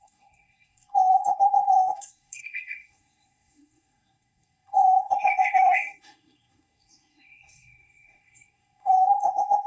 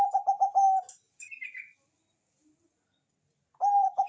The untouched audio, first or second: second